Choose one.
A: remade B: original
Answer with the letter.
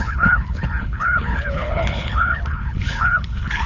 A